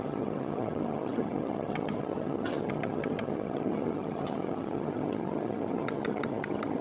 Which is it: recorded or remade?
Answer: remade